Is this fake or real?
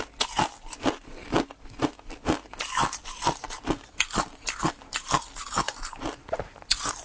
real